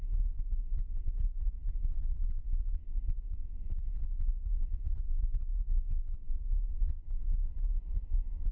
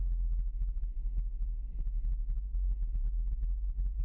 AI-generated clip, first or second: first